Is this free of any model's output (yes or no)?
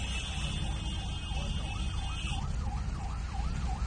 yes